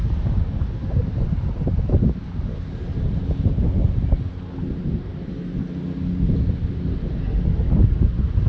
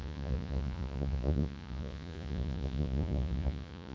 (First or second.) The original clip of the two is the first